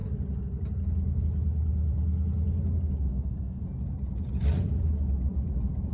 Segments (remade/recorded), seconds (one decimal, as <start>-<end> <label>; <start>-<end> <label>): 0.0-3.1 recorded; 3.1-3.6 remade; 3.6-5.9 recorded